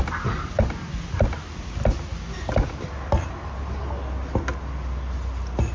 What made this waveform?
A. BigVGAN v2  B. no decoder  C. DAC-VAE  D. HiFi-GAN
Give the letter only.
B